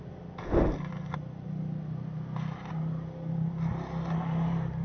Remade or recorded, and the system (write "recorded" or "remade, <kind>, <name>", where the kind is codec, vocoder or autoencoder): recorded